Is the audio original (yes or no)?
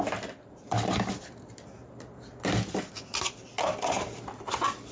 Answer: yes